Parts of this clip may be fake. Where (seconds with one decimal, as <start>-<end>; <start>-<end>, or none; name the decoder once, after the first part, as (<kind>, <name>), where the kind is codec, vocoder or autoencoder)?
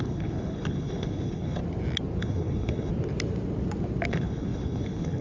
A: 0.0-1.6 (codec, HILCodec); 2.2-2.9; 4.1-5.2